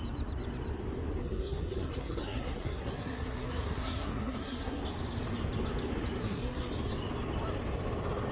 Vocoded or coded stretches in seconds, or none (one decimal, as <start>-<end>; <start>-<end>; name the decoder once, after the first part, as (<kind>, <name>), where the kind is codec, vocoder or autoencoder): 1.2-4.8 (codec, SNAC); 6.2-6.7